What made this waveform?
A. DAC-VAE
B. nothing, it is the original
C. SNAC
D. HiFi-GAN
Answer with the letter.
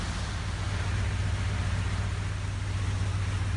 B